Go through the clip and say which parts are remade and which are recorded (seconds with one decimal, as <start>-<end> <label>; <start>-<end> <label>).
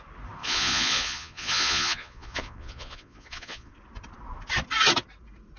0.0-0.4 recorded; 0.4-3.7 remade; 3.7-5.6 recorded